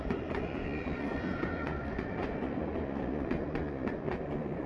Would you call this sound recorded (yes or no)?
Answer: no